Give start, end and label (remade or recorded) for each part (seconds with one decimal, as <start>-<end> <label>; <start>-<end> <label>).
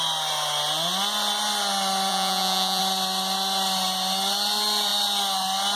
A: 0.0-2.1 recorded; 2.1-2.8 remade; 2.8-5.8 recorded